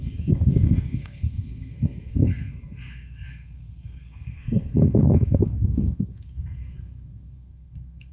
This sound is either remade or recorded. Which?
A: remade